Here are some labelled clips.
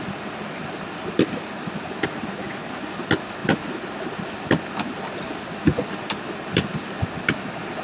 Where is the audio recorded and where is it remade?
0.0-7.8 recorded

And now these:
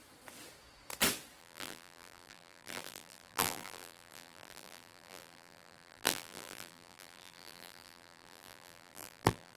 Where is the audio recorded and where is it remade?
0.0-1.4 recorded; 1.4-9.6 remade

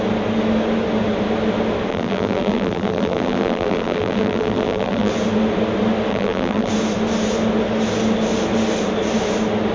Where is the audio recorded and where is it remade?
0.0-1.9 recorded; 1.9-5.1 remade; 5.1-6.1 recorded; 6.1-6.7 remade; 6.7-9.7 recorded